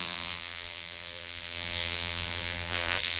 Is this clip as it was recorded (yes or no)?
no